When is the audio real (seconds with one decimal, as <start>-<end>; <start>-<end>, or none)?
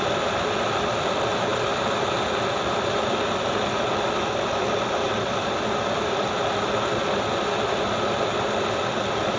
0.0-9.4